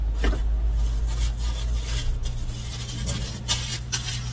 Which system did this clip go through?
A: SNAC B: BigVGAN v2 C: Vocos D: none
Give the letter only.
D